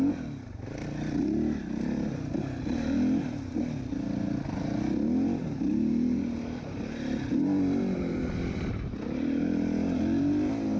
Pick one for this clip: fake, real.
real